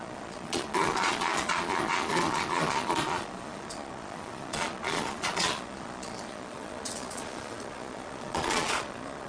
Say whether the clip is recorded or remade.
remade